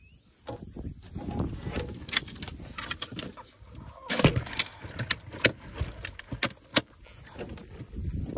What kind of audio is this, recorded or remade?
recorded